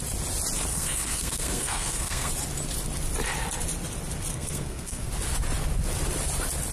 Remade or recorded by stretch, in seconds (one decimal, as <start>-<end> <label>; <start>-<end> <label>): 0.0-0.7 recorded; 0.7-2.3 remade; 2.3-4.3 recorded; 4.3-5.1 remade; 5.1-6.7 recorded